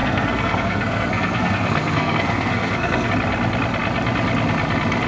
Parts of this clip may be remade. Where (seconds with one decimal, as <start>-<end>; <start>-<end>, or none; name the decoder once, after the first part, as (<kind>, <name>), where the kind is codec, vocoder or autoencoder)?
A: 0.0-3.1 (codec, SNAC)